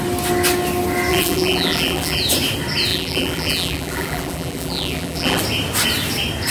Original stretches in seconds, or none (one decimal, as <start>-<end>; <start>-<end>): 0.0-1.1; 2.2-2.9; 5.4-6.5